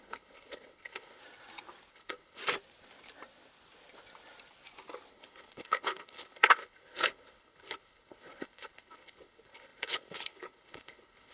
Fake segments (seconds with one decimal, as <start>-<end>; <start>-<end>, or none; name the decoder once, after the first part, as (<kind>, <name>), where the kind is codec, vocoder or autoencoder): 0.0-1.2 (codec, HILCodec); 1.9-2.4; 5.1-11.3

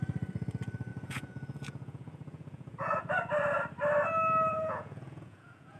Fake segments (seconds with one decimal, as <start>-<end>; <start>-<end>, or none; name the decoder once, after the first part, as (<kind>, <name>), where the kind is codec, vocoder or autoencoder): 0.9-3.0 (vocoder, Vocos); 4.5-5.8

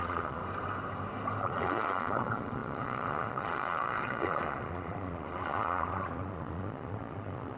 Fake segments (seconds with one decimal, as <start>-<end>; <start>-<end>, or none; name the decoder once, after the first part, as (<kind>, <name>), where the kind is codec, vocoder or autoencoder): 0.0-0.4 (vocoder, Vocos); 1.4-7.6